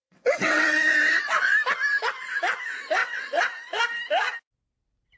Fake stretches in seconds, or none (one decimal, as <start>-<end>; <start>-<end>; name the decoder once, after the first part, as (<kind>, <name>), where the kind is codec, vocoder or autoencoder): 0.0-1.5 (vocoder, WaveNeXt); 3.0-3.8